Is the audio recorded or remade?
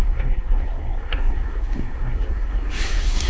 remade